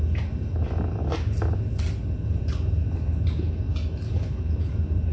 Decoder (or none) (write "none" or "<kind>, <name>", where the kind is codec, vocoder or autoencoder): none